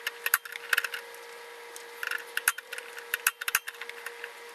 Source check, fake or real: real